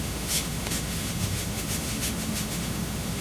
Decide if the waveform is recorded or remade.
remade